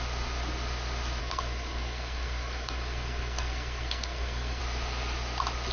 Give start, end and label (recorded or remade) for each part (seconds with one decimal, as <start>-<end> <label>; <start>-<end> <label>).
0.0-1.2 recorded; 1.2-4.6 remade; 4.6-5.7 recorded